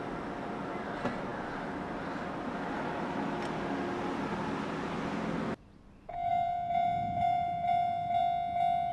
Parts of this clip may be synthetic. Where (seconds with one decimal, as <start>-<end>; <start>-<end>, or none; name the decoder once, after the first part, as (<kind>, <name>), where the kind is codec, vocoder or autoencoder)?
6.3-8.2 (vocoder, BigVGAN v2)